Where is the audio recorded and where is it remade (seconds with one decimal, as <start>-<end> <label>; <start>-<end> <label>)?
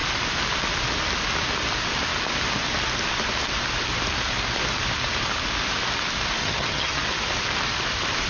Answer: 0.0-6.4 recorded; 6.4-7.0 remade; 7.0-8.3 recorded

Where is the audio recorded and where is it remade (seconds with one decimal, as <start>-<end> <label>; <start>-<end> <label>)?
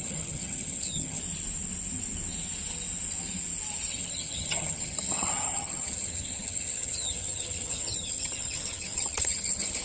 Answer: 0.0-1.2 remade; 1.2-3.9 recorded; 3.9-9.8 remade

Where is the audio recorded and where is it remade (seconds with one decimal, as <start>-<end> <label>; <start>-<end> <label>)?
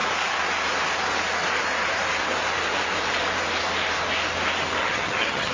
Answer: 0.0-4.8 recorded; 4.8-5.5 remade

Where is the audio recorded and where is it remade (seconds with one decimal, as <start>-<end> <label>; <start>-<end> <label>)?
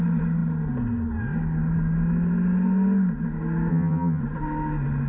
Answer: 0.0-3.7 recorded; 3.7-4.2 remade; 4.2-5.1 recorded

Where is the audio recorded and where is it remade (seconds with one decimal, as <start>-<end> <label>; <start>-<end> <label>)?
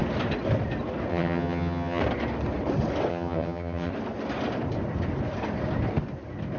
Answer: 0.0-1.1 recorded; 1.1-2.0 remade; 2.0-3.1 recorded; 3.1-3.9 remade; 3.9-6.6 recorded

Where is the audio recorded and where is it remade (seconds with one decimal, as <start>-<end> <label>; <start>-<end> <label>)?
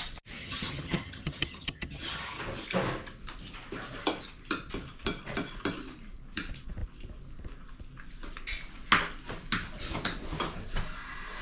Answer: 0.0-0.4 recorded; 0.4-2.4 remade; 2.4-11.4 recorded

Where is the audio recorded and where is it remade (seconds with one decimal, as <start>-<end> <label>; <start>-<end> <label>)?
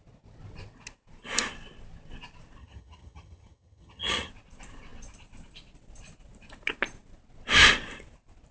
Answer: 0.0-2.6 recorded; 2.6-4.3 remade; 4.3-8.5 recorded